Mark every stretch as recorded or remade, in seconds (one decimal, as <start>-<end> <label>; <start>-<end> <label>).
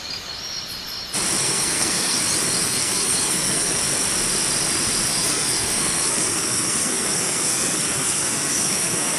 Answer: 0.0-1.4 recorded; 1.4-2.2 remade; 2.2-2.6 recorded; 2.6-3.8 remade; 3.8-5.1 recorded; 5.1-9.2 remade